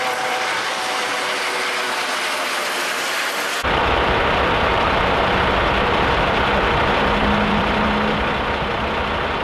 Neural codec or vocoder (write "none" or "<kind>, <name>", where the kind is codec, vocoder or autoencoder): vocoder, BigVGAN v2